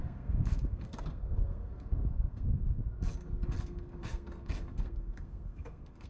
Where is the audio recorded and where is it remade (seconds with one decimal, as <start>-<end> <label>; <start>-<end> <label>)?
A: 0.0-2.8 remade; 2.8-3.6 recorded; 3.6-6.1 remade

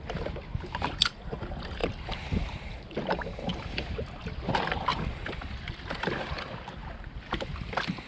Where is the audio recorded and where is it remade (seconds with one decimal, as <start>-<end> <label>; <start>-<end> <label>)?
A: 0.0-1.8 recorded; 1.8-3.0 remade; 3.0-3.5 recorded; 3.5-4.4 remade; 4.4-4.9 recorded; 4.9-5.8 remade; 5.8-6.8 recorded; 6.8-8.1 remade